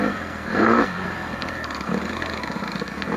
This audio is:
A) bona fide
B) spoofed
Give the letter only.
B